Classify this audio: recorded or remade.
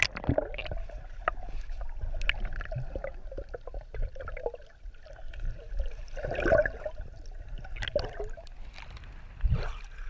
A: recorded